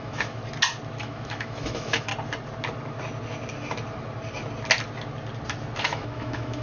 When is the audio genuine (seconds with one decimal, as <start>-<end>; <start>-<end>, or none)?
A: 0.4-1.0; 2.1-5.8

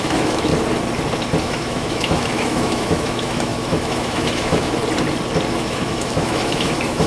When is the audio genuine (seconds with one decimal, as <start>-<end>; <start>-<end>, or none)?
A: 0.5-1.4; 4.8-5.5

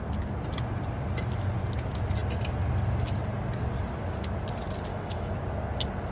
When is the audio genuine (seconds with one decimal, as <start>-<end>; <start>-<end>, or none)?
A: 0.0-4.9; 5.4-6.1

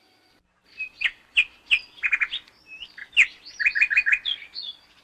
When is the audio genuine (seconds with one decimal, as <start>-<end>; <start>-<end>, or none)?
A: 0.0-5.0